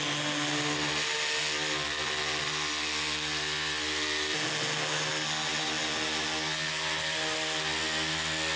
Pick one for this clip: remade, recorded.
recorded